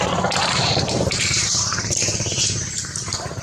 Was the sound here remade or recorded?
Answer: remade